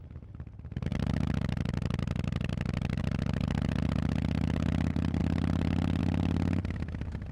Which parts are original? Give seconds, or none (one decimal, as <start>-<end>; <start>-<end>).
0.0-7.3